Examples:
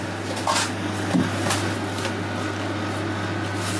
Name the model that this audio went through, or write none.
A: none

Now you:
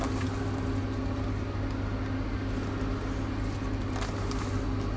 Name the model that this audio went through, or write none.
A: none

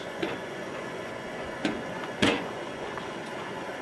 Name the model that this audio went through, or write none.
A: vocoder, Vocos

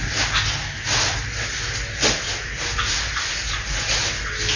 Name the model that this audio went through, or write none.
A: none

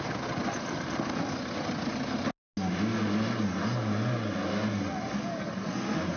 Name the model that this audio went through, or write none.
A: none